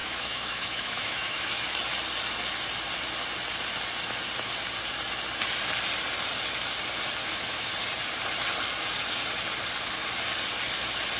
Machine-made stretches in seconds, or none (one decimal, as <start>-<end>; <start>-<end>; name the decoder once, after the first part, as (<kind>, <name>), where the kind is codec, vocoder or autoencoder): 0.0-1.5 (autoencoder, DAC-VAE); 7.2-7.7